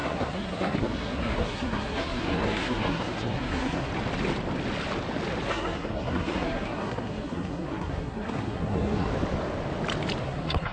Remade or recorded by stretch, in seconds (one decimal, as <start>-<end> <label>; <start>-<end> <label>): 0.0-3.9 remade; 3.9-5.5 recorded; 5.5-9.1 remade; 9.1-10.2 recorded; 10.2-10.7 remade